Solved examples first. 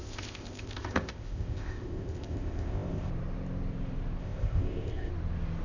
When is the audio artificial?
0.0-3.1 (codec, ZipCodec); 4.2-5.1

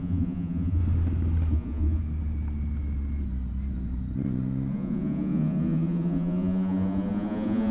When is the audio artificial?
0.0-0.8 (vocoder, Vocos); 1.5-2.0; 4.7-7.7

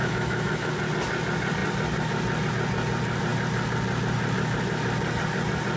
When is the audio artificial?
0.0-0.7 (autoencoder, DAC-VAE)

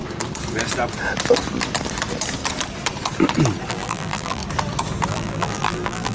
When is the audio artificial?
3.7-4.4 (vocoder, BigVGAN v2); 5.1-6.1

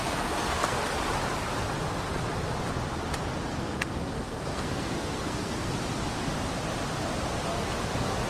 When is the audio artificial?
0.0-0.8 (codec, SNAC); 3.5-5.7

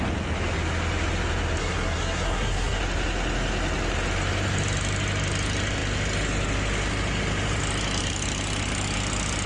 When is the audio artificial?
1.6-2.8 (codec, SNAC)

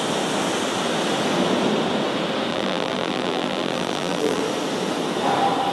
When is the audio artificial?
2.5-4.4 (vocoder, BigVGAN v2)